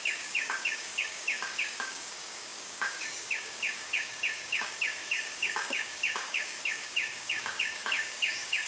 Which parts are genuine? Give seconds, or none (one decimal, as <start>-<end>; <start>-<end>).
none